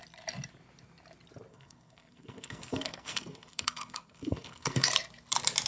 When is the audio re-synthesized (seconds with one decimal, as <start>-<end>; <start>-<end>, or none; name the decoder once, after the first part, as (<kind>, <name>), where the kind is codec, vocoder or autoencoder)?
1.5-4.9 (codec, SNAC)